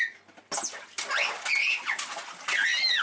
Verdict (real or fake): real